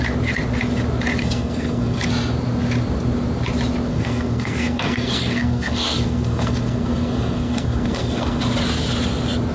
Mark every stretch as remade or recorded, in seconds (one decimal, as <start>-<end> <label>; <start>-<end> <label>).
0.0-1.2 recorded; 1.2-2.1 remade; 2.1-3.9 recorded; 3.9-8.4 remade; 8.4-9.5 recorded